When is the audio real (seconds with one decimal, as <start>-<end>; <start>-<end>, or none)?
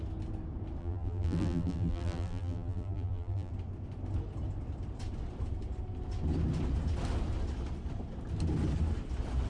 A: 0.0-0.8; 3.5-9.5